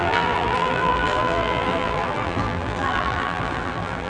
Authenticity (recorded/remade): remade